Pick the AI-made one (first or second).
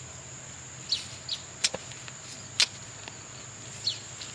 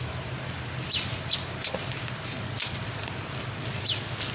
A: second